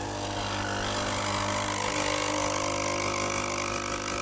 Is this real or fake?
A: real